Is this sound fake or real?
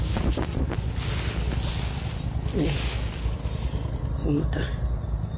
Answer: real